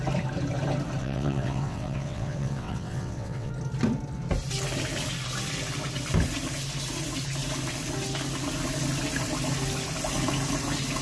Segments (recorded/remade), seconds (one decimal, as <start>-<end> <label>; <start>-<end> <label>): 0.0-1.0 recorded; 1.0-3.5 remade; 3.5-11.0 recorded